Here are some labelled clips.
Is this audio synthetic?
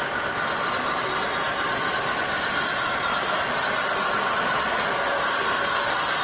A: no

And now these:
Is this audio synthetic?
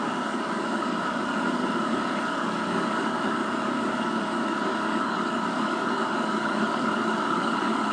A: yes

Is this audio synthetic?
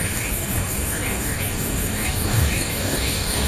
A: yes